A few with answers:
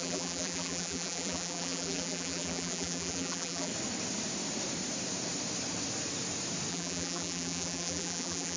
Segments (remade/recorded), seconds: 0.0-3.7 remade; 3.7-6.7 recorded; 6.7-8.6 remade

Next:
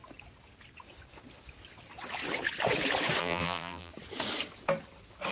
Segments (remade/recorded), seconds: 0.0-3.2 recorded; 3.2-3.9 remade; 3.9-5.3 recorded